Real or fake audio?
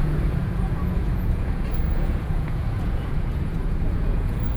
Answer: fake